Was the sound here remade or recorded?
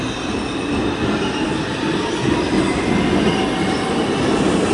recorded